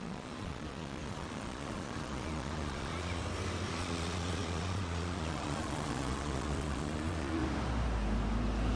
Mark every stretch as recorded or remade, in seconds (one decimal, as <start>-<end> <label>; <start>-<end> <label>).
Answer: 0.0-3.2 remade; 3.2-3.7 recorded; 3.7-7.4 remade; 7.4-8.8 recorded